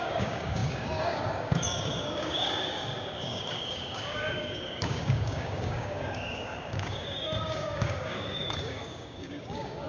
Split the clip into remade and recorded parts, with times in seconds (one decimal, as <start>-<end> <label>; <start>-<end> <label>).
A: 0.0-9.9 remade